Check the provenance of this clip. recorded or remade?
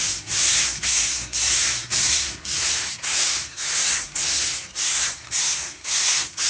remade